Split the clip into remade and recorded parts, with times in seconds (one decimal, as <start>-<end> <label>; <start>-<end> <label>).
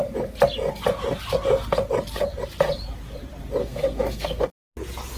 0.0-3.6 recorded; 3.6-4.5 remade; 4.5-5.2 recorded